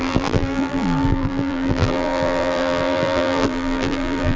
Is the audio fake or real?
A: fake